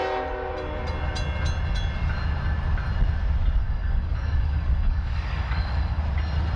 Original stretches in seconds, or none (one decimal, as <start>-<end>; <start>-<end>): 0.0-3.6; 6.0-6.6